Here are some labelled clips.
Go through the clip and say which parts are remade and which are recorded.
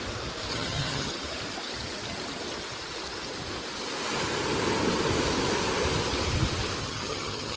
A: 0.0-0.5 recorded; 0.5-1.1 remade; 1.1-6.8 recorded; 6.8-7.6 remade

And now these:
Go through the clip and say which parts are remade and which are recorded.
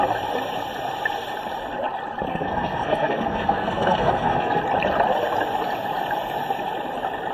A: 0.0-2.3 recorded; 2.3-4.6 remade; 4.6-7.3 recorded